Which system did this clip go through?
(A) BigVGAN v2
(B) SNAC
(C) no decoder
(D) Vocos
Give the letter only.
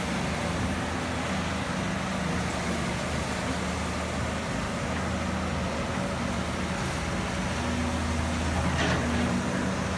C